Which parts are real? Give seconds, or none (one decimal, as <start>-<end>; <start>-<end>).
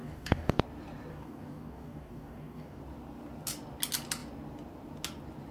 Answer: 0.6-1.1; 2.8-5.5